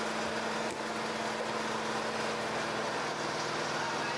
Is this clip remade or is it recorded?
recorded